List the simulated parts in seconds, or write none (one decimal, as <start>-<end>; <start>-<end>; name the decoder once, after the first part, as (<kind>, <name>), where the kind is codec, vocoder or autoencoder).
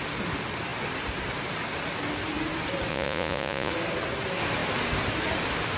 2.9-3.7 (vocoder, Vocos)